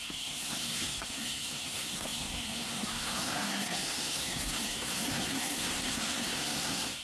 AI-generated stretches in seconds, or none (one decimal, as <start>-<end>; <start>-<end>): 0.0-7.0